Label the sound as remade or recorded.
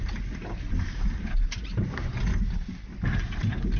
recorded